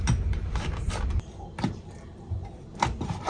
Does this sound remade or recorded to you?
recorded